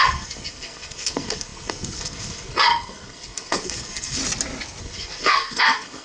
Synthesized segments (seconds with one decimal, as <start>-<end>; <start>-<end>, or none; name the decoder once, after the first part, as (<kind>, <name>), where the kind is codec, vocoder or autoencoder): 0.0-4.2 (codec, SNAC); 4.8-6.0

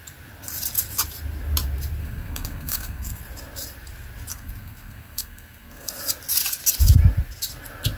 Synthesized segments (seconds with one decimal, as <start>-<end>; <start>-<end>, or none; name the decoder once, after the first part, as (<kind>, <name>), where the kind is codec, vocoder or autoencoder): 2.0-3.2 (codec, SNAC); 4.3-6.0

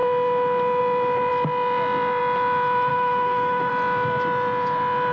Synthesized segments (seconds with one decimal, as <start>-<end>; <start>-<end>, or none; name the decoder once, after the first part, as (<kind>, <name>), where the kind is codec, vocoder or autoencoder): 2.9-3.7 (autoencoder, DAC-VAE)

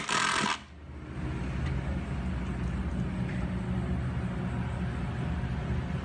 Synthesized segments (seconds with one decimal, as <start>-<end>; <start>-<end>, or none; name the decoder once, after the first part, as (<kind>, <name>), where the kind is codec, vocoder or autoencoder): none

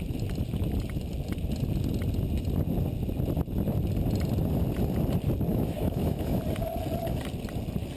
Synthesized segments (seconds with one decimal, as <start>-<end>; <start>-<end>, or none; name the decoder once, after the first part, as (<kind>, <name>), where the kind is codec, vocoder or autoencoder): 5.5-6.4 (autoencoder, DAC-VAE)

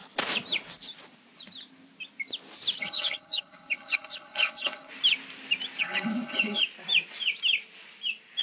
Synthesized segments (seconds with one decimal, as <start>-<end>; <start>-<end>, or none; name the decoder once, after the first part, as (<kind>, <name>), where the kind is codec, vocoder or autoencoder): 2.8-4.9 (codec, HILCodec); 5.8-6.6

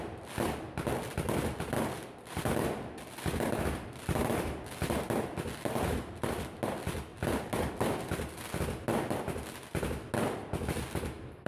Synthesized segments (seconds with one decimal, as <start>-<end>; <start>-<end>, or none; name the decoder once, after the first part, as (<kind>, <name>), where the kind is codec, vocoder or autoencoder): none